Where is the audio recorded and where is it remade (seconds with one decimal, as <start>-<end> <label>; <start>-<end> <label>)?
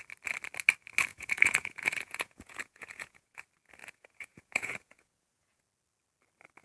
0.0-1.1 recorded; 1.1-3.4 remade; 3.4-3.8 recorded; 3.8-5.6 remade; 5.6-6.6 recorded